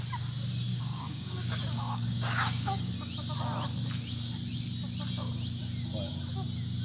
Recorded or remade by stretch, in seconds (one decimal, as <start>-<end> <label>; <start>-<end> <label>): 0.0-0.7 recorded; 0.7-2.9 remade; 2.9-6.8 recorded